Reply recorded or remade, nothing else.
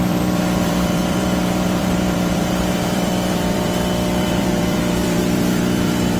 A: remade